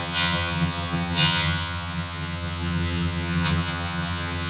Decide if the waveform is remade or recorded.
remade